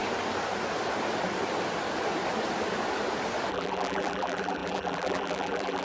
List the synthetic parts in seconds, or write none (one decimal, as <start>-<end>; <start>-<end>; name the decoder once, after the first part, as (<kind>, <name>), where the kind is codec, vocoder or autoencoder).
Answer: 3.5-5.8 (vocoder, BigVGAN v2)